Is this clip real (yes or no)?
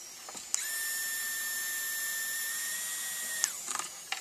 yes